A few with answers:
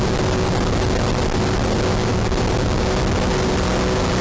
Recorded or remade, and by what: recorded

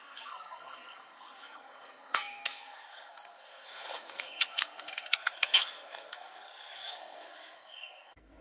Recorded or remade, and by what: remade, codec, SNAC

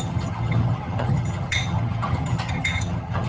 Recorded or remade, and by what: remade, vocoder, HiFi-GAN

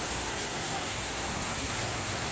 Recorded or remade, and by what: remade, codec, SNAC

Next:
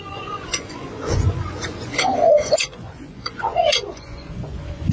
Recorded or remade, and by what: remade, vocoder, Vocos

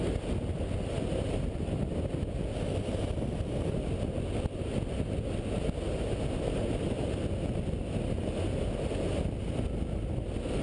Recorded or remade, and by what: recorded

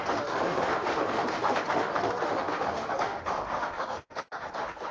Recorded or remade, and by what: remade, autoencoder, DAC-VAE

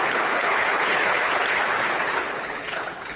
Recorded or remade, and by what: remade, codec, HILCodec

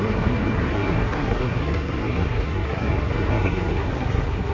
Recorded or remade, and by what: remade, codec, SNAC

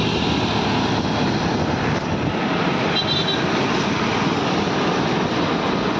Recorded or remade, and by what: recorded